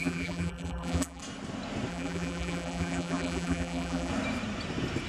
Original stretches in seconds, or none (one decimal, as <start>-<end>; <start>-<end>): 1.2-1.9; 4.1-5.1